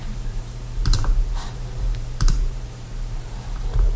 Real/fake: fake